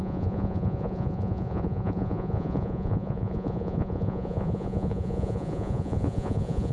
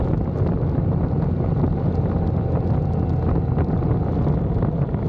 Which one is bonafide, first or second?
second